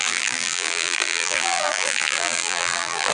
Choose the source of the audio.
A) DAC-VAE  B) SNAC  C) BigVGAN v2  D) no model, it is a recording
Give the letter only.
C